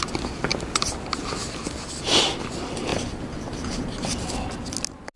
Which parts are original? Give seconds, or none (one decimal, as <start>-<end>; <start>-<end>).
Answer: 0.0-2.9; 3.7-5.2